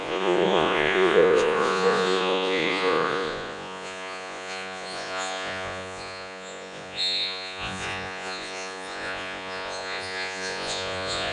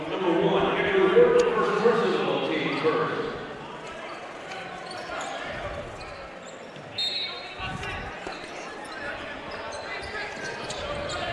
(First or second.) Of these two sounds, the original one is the second